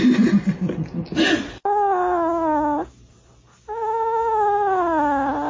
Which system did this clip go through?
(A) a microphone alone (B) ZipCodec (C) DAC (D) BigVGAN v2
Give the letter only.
A